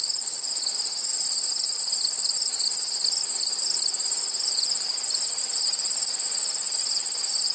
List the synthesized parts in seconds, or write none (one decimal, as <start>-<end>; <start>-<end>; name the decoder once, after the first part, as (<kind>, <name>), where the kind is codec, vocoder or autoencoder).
none

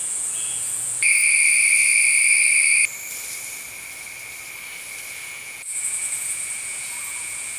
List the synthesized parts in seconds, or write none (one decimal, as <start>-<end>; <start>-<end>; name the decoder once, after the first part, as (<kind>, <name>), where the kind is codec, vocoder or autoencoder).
0.0-1.2 (vocoder, Vocos); 5.1-7.6

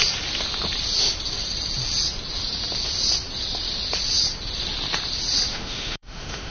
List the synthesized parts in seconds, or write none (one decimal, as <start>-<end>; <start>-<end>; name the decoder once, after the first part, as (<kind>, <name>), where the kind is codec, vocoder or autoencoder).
5.5-6.5 (autoencoder, DAC-VAE)